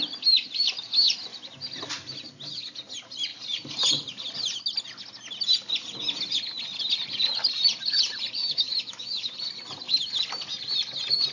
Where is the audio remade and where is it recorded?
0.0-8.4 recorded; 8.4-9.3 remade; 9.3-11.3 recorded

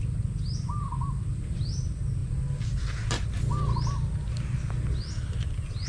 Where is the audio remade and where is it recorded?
0.0-5.9 recorded

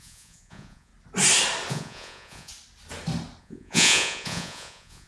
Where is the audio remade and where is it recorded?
0.0-0.9 remade; 0.9-1.7 recorded; 1.7-2.5 remade; 2.5-3.4 recorded; 3.4-5.1 remade

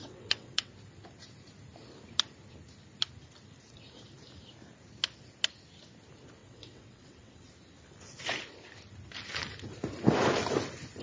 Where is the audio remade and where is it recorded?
0.0-0.7 remade; 0.7-6.4 recorded; 6.4-7.5 remade; 7.5-11.0 recorded

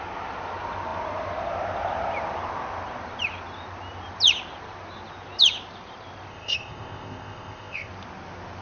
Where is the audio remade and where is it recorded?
0.0-6.3 recorded; 6.3-7.9 remade; 7.9-8.6 recorded

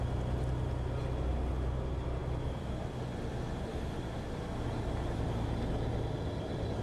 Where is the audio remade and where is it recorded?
0.0-6.8 recorded